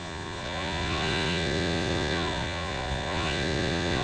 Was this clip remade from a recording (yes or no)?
yes